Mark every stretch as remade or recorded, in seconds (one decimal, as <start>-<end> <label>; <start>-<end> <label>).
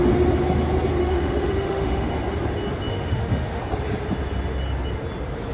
0.0-1.0 recorded; 1.0-2.2 remade; 2.2-2.9 recorded; 2.9-3.6 remade; 3.6-5.5 recorded